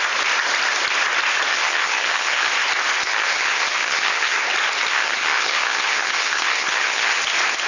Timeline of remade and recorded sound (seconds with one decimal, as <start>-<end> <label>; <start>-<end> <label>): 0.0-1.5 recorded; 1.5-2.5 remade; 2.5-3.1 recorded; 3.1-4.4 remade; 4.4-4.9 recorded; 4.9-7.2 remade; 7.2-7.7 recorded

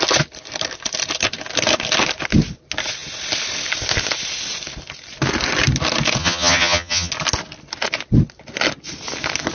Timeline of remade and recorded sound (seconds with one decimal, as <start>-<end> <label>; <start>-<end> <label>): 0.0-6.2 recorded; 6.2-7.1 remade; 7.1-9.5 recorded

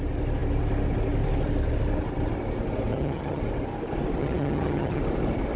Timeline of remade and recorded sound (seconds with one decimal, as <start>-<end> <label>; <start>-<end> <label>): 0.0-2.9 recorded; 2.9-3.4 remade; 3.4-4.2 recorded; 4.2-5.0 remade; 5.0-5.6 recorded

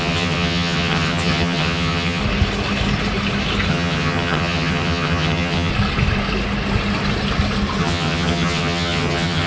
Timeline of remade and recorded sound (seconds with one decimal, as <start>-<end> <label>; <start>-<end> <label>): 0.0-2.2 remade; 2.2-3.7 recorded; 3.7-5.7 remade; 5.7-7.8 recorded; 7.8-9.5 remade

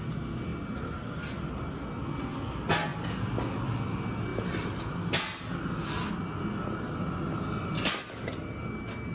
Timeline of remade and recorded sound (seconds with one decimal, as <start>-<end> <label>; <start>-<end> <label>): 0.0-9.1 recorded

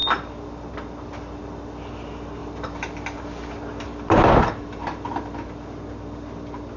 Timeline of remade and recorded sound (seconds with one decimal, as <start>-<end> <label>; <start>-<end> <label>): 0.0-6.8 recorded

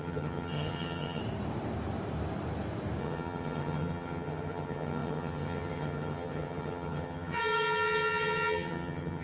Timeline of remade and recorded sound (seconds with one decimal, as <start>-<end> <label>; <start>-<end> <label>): 0.0-1.2 remade; 1.2-3.0 recorded; 3.0-9.2 remade